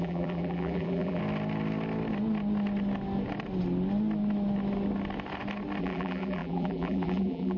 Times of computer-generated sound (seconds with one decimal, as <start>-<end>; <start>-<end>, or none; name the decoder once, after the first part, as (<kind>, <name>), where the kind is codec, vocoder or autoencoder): 0.0-1.2 (vocoder, BigVGAN v2); 5.8-7.6